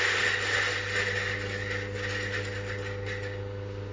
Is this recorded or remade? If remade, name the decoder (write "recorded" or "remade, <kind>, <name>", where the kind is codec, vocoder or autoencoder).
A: recorded